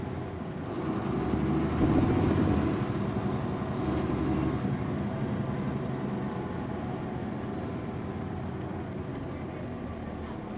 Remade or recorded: recorded